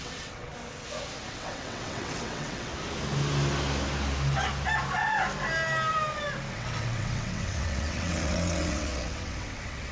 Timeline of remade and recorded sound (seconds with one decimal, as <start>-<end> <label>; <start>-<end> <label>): 0.0-0.5 remade; 0.5-1.3 recorded; 1.3-2.7 remade; 2.7-6.5 recorded; 6.5-9.9 remade